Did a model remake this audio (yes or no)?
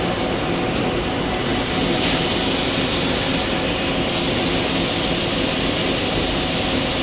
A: no